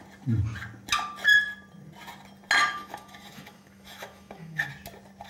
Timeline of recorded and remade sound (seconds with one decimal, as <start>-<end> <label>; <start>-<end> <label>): 0.0-2.6 recorded; 2.6-4.7 remade; 4.7-5.3 recorded